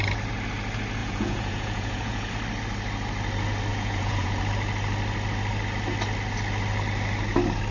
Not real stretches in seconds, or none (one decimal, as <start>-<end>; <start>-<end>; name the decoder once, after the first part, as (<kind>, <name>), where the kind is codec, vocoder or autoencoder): 1.0-2.3 (vocoder, Vocos); 3.7-4.4